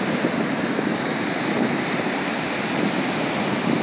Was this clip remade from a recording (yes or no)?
no